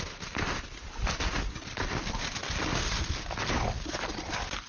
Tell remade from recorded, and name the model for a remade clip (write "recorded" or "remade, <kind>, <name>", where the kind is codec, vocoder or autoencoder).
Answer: recorded